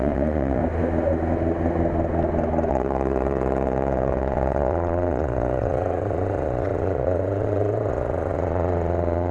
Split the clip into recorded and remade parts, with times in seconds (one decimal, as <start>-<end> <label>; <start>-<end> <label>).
0.0-0.6 remade; 0.6-2.7 recorded; 2.7-9.3 remade